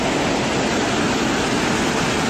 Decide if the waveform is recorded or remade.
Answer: recorded